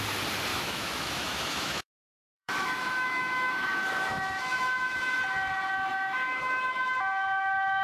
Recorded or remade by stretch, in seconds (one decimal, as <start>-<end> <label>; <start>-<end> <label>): 0.0-0.5 recorded; 0.5-5.2 remade; 5.2-5.9 recorded; 5.9-6.9 remade; 6.9-7.8 recorded